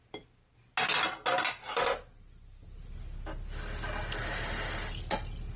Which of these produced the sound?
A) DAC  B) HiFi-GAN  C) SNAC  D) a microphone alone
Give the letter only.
D